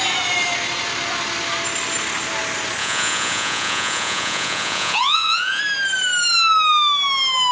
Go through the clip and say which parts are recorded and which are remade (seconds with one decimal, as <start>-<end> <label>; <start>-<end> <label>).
0.0-2.8 recorded; 2.8-5.6 remade; 5.6-7.5 recorded